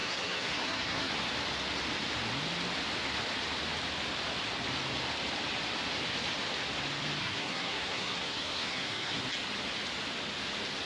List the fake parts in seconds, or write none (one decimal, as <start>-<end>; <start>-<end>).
0.0-1.1; 7.2-9.2